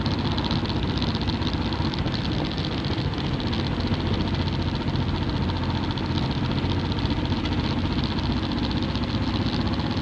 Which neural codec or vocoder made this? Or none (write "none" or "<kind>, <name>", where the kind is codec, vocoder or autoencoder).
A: none